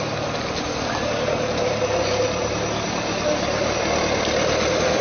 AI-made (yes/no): no